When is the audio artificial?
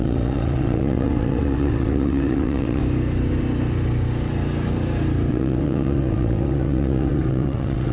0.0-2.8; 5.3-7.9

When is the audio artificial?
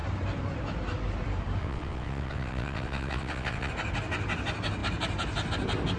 1.6-3.7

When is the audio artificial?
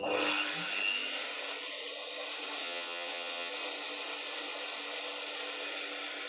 2.6-3.5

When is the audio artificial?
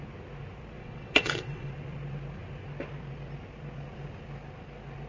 0.8-1.7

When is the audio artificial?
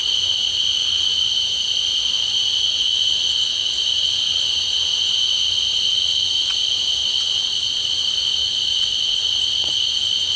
7.0-7.9; 8.4-9.7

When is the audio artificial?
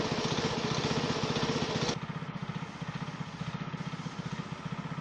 none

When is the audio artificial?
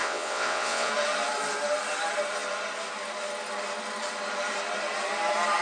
0.0-0.9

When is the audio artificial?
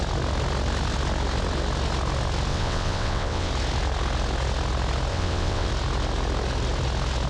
2.5-3.5; 5.1-5.7